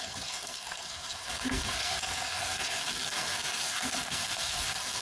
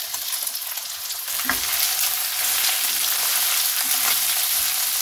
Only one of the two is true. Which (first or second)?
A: second